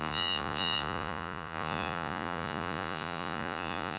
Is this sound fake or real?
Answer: fake